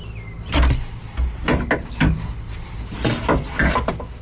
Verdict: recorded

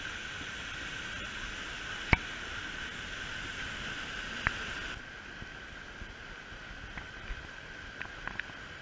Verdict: recorded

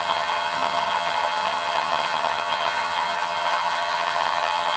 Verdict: remade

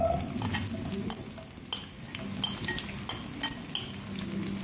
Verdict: recorded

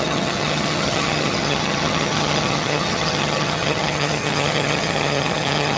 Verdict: remade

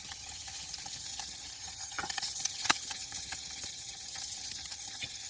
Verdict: remade